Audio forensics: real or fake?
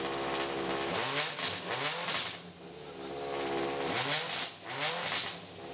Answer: real